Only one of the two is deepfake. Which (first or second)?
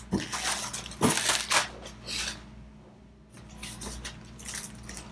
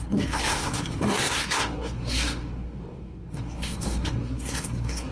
second